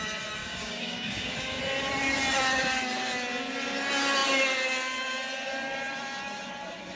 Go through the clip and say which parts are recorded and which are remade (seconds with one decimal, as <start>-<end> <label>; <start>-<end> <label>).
0.0-0.4 recorded; 0.4-1.6 remade; 1.6-7.0 recorded